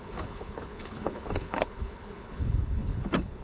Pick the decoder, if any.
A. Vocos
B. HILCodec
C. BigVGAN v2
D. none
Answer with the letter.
B